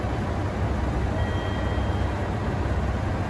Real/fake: real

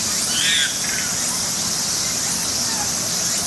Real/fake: real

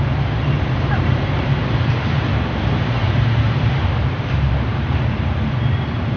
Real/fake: fake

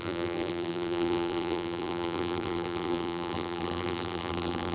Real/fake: fake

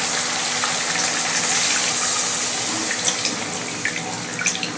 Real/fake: real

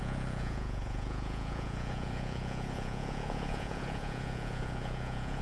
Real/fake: fake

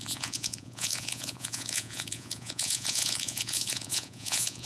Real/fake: fake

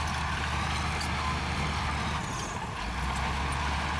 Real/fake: real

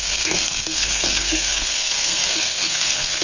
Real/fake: fake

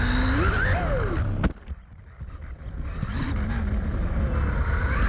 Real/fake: real